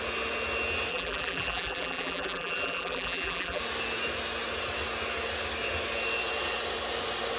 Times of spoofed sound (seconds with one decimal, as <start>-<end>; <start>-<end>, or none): 0.9-3.6